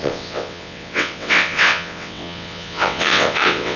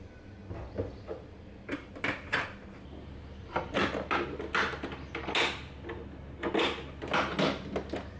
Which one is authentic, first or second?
second